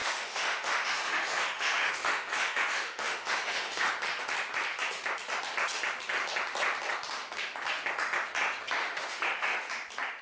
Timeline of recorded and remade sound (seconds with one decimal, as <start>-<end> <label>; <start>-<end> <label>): 0.0-3.9 remade; 3.9-8.8 recorded; 8.8-9.7 remade; 9.7-10.2 recorded